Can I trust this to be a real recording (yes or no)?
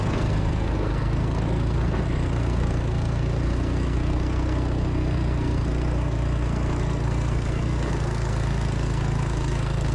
no